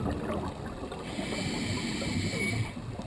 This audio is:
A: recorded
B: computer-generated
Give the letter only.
A